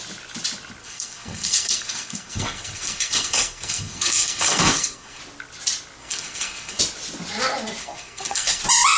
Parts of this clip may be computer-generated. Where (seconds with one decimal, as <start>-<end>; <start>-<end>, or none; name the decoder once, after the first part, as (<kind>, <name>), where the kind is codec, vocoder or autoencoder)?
0.8-5.2 (codec, SNAC); 6.0-6.8; 7.8-8.6